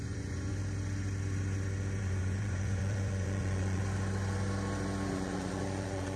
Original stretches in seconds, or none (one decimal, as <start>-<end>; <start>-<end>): 0.5-2.0; 3.8-5.1